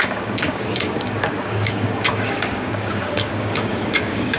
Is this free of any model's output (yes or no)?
no